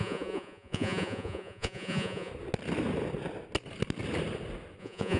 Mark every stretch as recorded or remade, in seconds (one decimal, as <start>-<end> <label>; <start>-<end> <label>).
0.0-2.3 remade; 2.3-4.8 recorded; 4.8-5.2 remade